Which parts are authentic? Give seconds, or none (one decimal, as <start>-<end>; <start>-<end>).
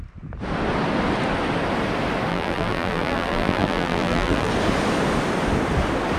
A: 0.0-2.3; 4.5-6.2